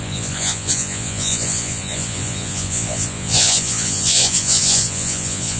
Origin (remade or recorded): remade